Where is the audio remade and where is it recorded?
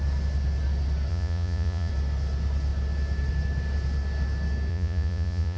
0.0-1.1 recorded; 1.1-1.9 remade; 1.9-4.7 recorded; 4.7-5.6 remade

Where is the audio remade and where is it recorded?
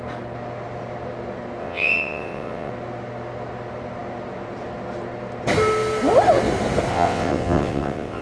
0.0-1.6 recorded; 1.6-2.7 remade; 2.7-6.9 recorded; 6.9-8.2 remade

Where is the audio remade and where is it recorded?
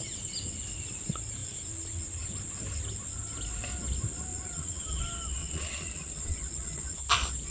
0.0-4.3 recorded; 4.3-5.0 remade; 5.0-5.4 recorded; 5.4-7.0 remade; 7.0-7.5 recorded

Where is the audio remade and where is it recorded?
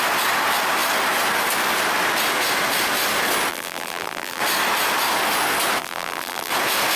0.0-3.5 recorded; 3.5-4.4 remade; 4.4-5.8 recorded; 5.8-6.5 remade; 6.5-7.0 recorded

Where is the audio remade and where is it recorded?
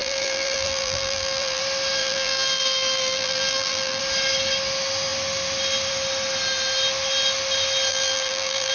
0.0-1.6 remade; 1.6-2.0 recorded; 2.0-4.0 remade; 4.0-7.9 recorded; 7.9-8.7 remade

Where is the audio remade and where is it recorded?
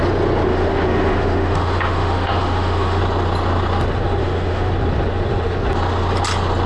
0.0-0.5 recorded; 0.5-3.0 remade; 3.0-4.2 recorded; 4.2-4.7 remade; 4.7-6.7 recorded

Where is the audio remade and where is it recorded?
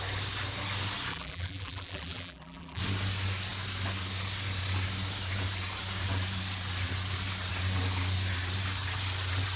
0.0-1.1 recorded; 1.1-2.8 remade; 2.8-9.6 recorded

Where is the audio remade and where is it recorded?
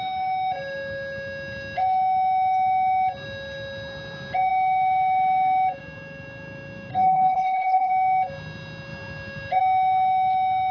0.0-6.9 recorded; 6.9-7.9 remade; 7.9-10.7 recorded